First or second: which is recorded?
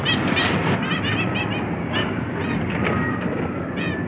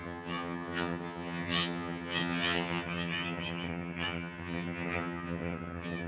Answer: first